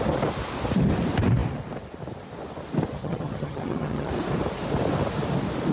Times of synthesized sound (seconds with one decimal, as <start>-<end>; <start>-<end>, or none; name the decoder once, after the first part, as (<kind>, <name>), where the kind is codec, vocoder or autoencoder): 3.0-4.1 (vocoder, HiFi-GAN)